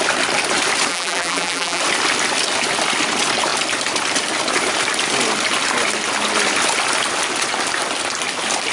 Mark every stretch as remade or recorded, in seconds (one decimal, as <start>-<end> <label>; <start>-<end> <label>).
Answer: 0.0-0.9 recorded; 0.9-1.8 remade; 1.8-8.7 recorded